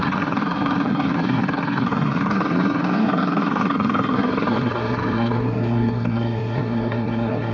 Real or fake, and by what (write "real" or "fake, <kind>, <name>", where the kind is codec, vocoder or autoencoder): fake, codec, SNAC